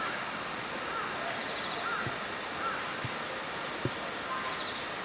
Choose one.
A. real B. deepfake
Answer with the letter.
A